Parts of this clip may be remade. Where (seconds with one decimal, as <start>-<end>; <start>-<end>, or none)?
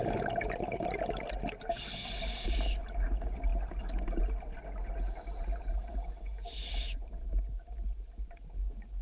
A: none